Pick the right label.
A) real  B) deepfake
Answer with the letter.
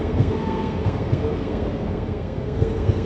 B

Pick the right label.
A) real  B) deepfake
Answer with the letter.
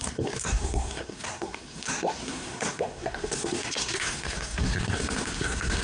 B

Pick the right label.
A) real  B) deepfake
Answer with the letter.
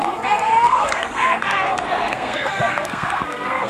B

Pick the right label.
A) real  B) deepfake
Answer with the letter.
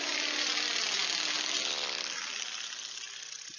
A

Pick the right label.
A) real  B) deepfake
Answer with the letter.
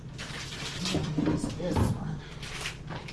A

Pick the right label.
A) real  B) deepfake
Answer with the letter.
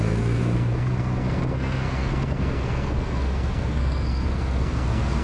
B